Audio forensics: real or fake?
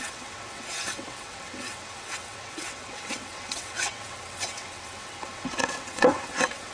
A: fake